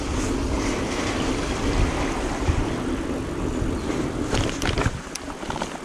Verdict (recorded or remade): recorded